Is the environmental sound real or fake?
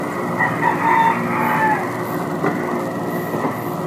real